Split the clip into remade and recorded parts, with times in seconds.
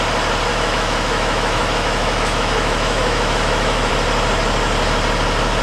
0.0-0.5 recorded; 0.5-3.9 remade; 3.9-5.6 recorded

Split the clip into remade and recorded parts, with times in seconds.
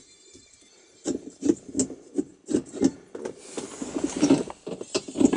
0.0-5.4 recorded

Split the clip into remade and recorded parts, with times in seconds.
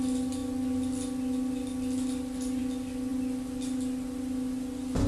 0.0-5.1 recorded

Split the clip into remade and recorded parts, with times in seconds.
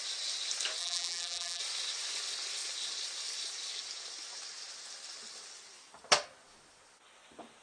0.0-0.8 recorded; 0.8-1.6 remade; 1.6-7.6 recorded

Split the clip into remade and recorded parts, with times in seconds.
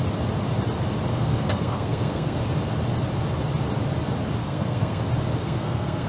0.0-1.1 recorded; 1.1-2.4 remade; 2.4-4.4 recorded; 4.4-5.0 remade; 5.0-5.4 recorded; 5.4-6.1 remade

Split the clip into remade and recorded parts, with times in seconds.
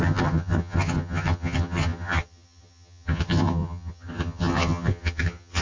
0.0-5.6 remade